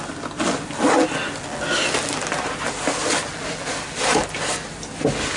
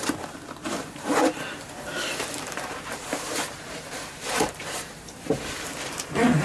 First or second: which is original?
first